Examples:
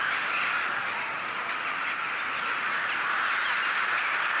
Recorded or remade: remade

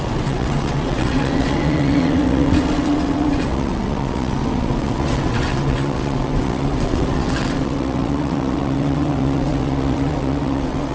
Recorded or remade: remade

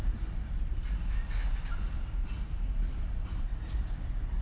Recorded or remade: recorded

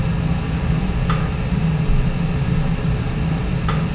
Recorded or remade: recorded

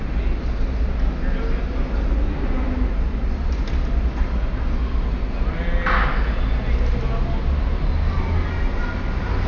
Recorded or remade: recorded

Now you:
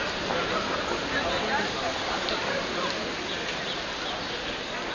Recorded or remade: recorded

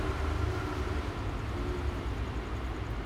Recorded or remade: recorded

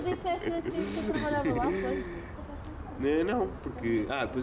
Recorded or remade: recorded